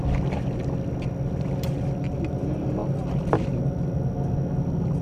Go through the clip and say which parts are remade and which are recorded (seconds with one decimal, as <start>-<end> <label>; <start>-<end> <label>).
0.0-2.8 recorded; 2.8-3.5 remade; 3.5-5.0 recorded